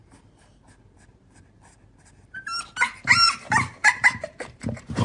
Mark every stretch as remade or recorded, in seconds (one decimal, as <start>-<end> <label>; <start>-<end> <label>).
0.0-3.0 recorded; 3.0-5.0 remade